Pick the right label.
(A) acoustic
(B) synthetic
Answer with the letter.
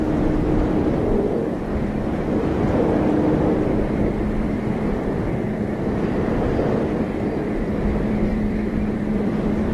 B